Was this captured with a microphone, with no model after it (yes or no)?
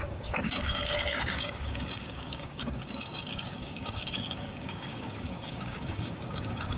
no